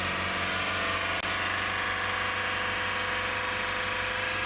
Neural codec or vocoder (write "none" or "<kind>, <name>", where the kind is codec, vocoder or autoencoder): none